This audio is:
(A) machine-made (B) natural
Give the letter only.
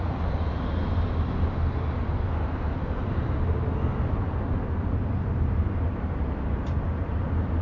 B